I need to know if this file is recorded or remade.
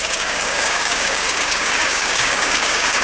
remade